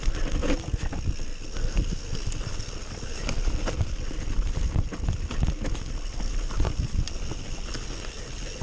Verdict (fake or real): real